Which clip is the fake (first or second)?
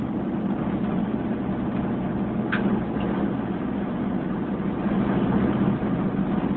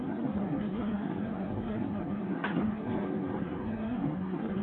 second